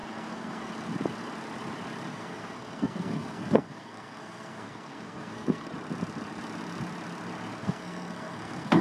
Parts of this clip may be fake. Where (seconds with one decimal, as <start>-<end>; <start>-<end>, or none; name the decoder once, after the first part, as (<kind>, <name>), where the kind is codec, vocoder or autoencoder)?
0.0-0.7 (codec, SNAC); 2.1-5.7; 7.6-8.8